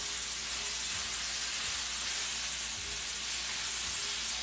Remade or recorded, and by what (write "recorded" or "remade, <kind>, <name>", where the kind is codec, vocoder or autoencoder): recorded